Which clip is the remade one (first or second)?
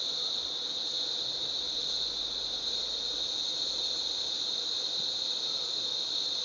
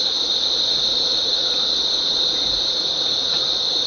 second